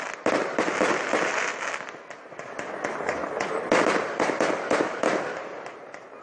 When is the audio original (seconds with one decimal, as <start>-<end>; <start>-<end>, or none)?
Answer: 0.0-6.2